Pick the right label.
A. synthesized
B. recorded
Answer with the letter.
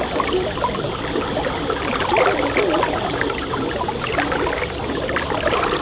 B